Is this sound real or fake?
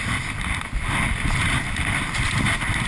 real